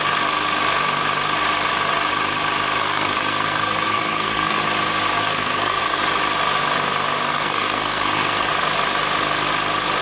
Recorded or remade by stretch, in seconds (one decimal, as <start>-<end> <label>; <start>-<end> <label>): 0.0-2.8 recorded; 2.8-4.6 remade; 4.6-5.2 recorded; 5.2-6.0 remade; 6.0-7.3 recorded; 7.3-8.5 remade; 8.5-10.0 recorded